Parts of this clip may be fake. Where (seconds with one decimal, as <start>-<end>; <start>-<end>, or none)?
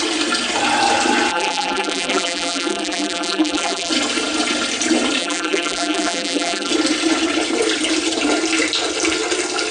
1.3-3.9; 5.2-6.7